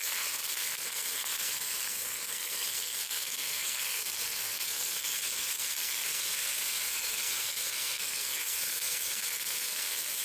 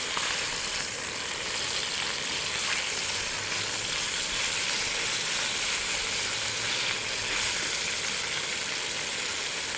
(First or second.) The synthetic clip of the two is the first